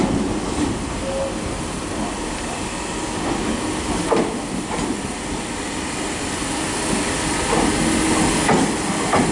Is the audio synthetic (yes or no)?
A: no